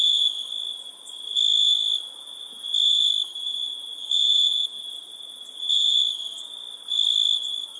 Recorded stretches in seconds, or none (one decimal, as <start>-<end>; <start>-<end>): 0.0-3.3; 6.0-7.8